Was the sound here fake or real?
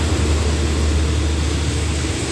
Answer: real